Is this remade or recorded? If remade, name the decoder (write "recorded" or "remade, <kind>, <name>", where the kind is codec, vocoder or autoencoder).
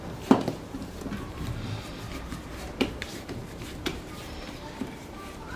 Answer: remade, vocoder, BigVGAN v2